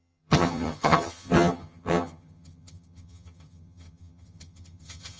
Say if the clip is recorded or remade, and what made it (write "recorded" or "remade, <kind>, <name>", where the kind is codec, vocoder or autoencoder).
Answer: remade, vocoder, HiFi-GAN